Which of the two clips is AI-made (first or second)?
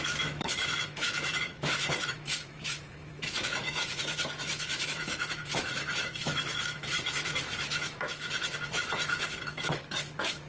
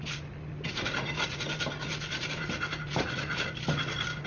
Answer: first